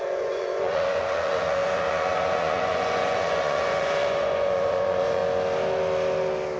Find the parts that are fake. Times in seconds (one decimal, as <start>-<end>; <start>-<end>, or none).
0.0-5.2